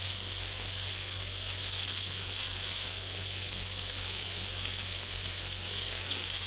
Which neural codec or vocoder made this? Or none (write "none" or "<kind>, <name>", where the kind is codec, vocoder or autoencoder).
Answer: codec, SNAC